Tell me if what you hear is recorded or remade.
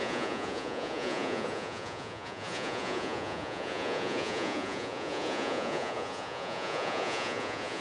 remade